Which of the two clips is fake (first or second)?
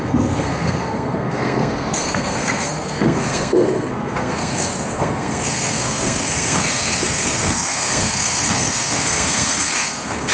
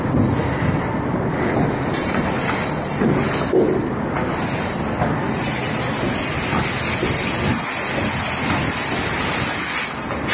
first